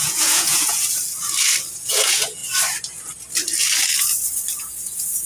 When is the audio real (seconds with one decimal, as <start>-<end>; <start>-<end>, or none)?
0.8-1.7; 2.4-4.6